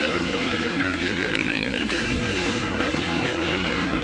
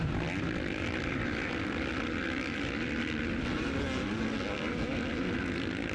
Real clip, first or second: second